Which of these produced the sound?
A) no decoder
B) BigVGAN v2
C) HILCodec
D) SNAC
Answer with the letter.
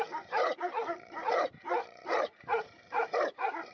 B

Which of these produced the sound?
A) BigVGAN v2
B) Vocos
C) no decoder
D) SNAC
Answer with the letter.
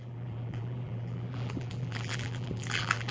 A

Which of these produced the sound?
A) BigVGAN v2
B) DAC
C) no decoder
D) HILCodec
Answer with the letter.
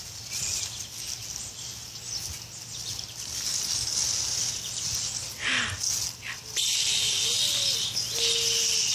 C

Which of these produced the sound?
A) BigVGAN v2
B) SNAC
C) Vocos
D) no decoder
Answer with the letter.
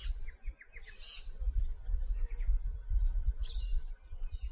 D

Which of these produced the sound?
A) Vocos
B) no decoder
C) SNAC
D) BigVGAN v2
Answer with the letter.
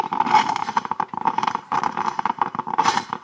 D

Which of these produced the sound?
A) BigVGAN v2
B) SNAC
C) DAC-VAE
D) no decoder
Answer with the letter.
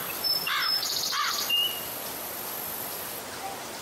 A